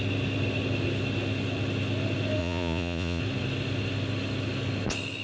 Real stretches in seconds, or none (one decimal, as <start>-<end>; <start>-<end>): 0.0-2.4; 3.2-5.2